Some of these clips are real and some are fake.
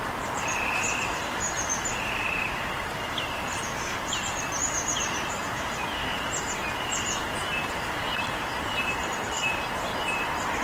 fake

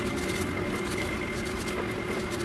real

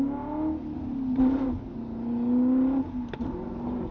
real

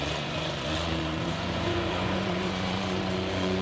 fake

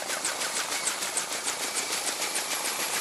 fake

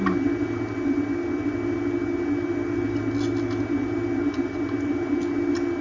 real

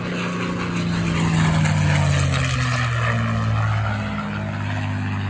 real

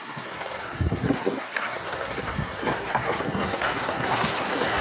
fake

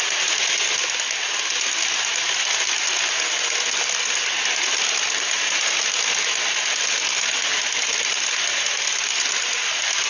real